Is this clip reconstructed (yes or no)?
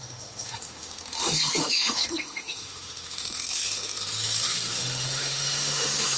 yes